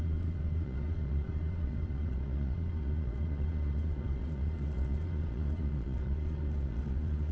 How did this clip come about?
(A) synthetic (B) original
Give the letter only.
A